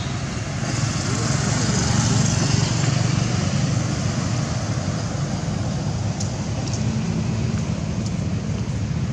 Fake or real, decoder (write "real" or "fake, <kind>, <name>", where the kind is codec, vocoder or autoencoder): real